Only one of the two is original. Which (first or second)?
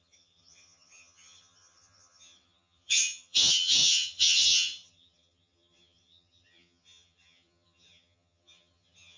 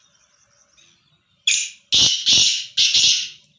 second